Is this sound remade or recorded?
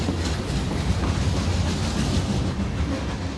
recorded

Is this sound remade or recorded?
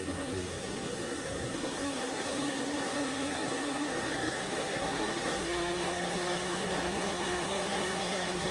remade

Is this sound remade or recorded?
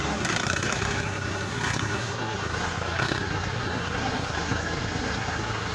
remade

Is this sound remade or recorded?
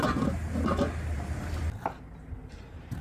recorded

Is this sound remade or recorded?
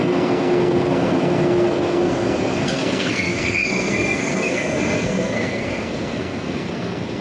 remade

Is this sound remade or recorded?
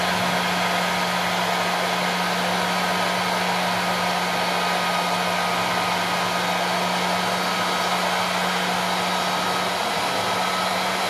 recorded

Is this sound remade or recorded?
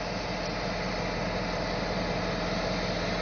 recorded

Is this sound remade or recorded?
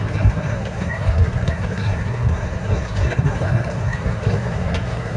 remade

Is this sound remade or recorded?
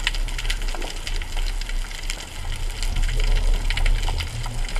recorded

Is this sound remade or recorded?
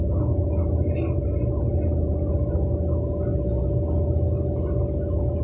recorded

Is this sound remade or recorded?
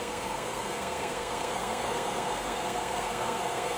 remade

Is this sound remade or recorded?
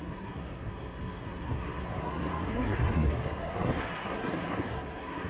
remade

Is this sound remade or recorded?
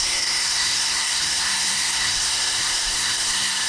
remade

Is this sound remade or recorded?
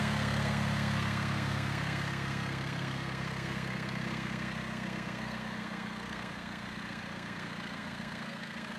remade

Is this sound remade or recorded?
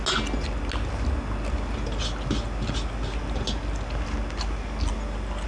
recorded